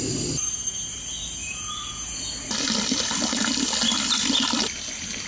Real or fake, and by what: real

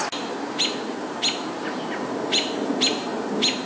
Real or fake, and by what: real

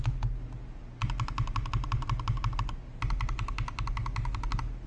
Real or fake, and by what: real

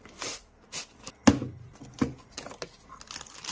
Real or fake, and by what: real